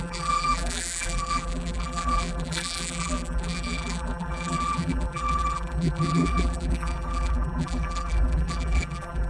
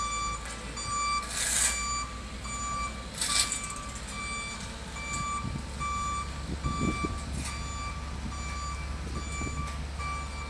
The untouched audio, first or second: second